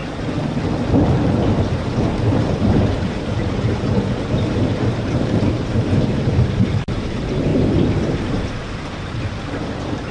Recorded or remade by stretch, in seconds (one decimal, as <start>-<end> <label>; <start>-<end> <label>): 0.0-1.7 recorded; 1.7-10.1 remade